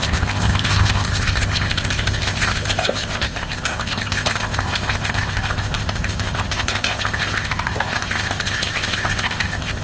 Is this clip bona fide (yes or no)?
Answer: no